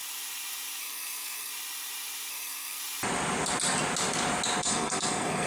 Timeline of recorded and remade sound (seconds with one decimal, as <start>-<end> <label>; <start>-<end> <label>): 0.0-0.8 recorded; 0.8-1.5 remade; 1.5-2.3 recorded; 2.3-2.8 remade; 2.8-4.6 recorded; 4.6-5.5 remade